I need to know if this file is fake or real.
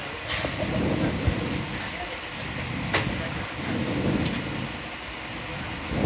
real